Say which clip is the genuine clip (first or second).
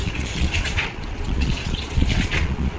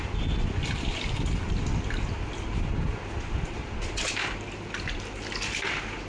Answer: second